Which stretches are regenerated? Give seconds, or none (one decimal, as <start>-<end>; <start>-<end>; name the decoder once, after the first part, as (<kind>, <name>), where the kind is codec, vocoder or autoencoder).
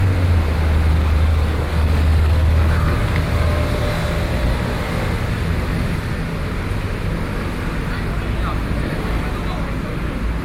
1.3-3.4 (codec, DAC)